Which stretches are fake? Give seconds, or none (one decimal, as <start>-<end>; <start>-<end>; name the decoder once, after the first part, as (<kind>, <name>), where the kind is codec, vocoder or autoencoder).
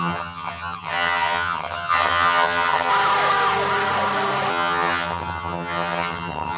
0.0-2.9 (vocoder, HiFi-GAN); 4.5-6.6